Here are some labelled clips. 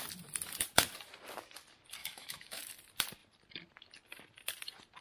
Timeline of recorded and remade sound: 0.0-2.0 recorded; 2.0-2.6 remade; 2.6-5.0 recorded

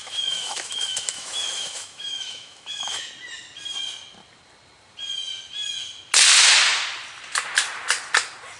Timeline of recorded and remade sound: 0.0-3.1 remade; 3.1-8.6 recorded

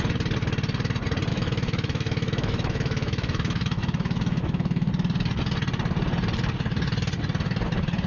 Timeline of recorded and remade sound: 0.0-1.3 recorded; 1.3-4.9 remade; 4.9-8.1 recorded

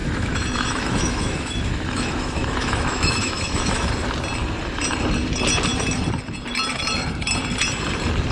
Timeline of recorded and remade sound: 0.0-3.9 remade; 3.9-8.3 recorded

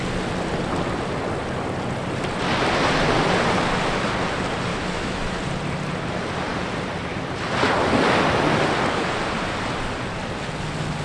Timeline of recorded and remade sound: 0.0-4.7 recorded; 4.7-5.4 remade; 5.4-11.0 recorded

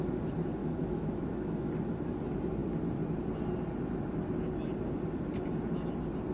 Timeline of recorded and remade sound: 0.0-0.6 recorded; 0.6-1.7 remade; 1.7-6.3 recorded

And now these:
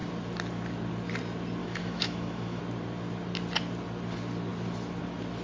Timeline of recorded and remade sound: 0.0-1.6 recorded; 1.6-2.6 remade; 2.6-5.4 recorded

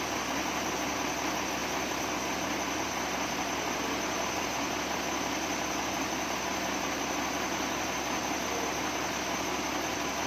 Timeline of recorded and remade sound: 0.0-10.3 recorded